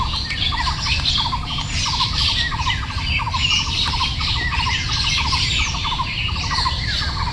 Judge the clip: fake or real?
real